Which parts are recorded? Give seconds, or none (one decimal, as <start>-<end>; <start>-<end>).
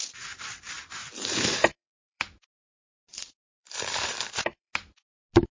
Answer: 0.0-1.0; 2.2-3.1; 4.7-5.6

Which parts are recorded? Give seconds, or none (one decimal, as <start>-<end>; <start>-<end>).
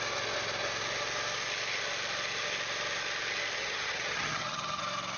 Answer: 0.0-3.6; 4.8-5.2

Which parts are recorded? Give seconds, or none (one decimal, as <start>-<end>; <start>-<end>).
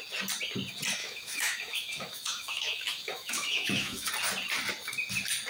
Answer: 0.0-1.0; 4.1-5.5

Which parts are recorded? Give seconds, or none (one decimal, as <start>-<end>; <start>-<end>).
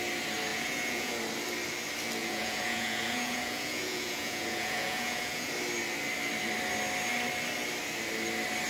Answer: 0.0-0.5; 1.1-2.2; 5.5-8.7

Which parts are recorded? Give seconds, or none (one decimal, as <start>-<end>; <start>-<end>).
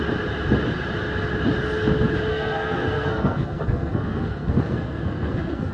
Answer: 0.0-2.3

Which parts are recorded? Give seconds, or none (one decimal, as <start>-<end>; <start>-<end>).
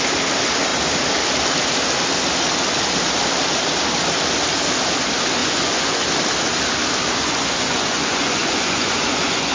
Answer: 0.0-5.4; 6.0-7.2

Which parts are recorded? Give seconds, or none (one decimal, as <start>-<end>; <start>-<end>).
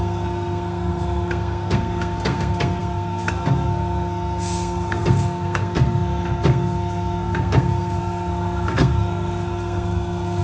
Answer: none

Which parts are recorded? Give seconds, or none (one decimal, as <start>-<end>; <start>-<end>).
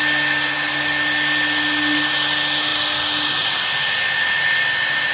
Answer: 0.0-5.1